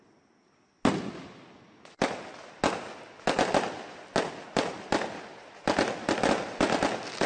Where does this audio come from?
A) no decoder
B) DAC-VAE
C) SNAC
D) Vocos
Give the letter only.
A